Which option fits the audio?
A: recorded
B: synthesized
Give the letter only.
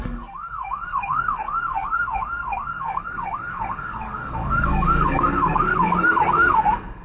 B